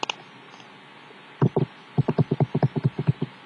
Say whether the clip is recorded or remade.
recorded